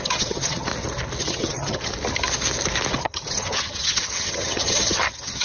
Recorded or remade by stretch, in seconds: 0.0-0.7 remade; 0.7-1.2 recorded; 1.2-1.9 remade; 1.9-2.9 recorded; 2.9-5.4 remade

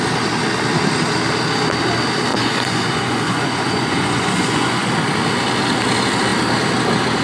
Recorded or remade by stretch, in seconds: 0.0-2.3 recorded; 2.3-4.9 remade; 4.9-7.2 recorded

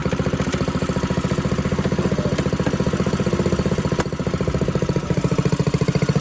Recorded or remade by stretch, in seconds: 0.0-6.2 recorded

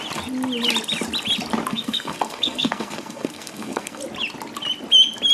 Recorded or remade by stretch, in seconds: 0.0-1.7 recorded; 1.7-4.0 remade; 4.0-5.3 recorded